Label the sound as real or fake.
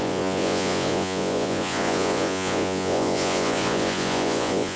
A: fake